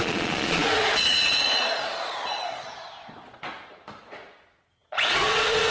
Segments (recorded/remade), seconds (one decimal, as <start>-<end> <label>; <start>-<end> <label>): 0.0-5.7 remade

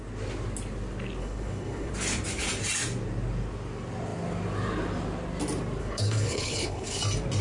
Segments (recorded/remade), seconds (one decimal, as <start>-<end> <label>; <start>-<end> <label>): 0.0-1.2 recorded; 1.2-1.9 remade; 1.9-5.8 recorded; 5.8-7.0 remade; 7.0-7.4 recorded

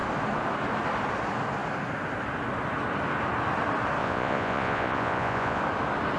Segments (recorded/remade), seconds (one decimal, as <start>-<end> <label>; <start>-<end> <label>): 0.0-4.0 recorded; 4.0-5.6 remade; 5.6-6.2 recorded

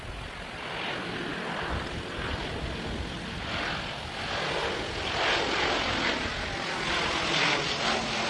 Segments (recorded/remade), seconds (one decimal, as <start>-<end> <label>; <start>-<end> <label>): 0.0-8.3 recorded

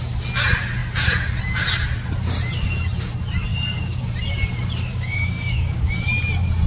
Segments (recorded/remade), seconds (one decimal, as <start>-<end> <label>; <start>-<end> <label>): 0.0-3.5 recorded; 3.5-4.0 remade; 4.0-4.9 recorded; 4.9-5.9 remade; 5.9-6.7 recorded